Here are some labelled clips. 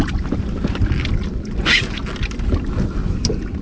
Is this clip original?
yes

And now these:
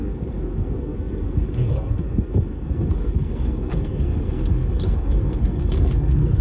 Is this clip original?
no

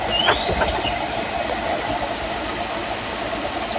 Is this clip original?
yes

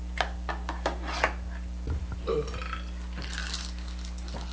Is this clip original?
yes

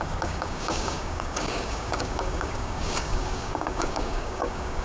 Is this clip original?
no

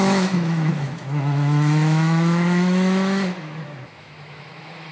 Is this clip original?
no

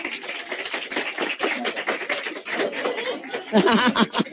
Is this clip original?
yes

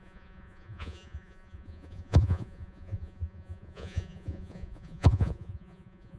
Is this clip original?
no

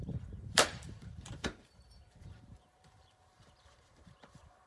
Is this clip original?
no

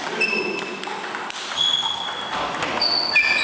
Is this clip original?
yes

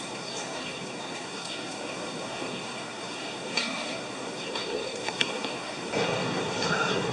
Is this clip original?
no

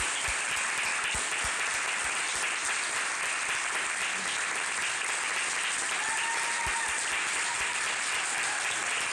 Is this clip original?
yes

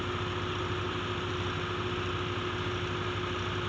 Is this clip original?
yes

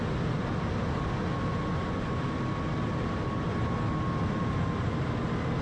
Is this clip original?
yes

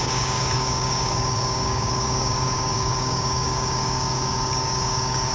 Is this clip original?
no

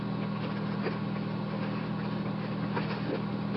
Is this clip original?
yes